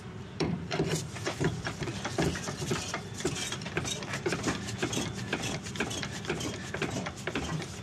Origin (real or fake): fake